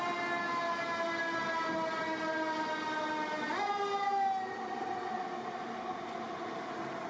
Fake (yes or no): no